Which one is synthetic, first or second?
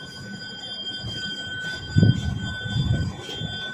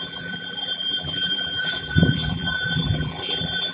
second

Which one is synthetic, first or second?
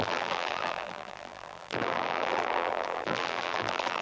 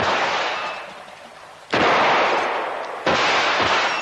first